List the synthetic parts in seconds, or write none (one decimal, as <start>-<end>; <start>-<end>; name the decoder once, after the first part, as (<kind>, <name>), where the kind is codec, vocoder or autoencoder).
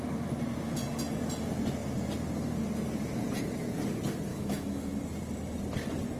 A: 4.3-5.0 (autoencoder, DAC-VAE)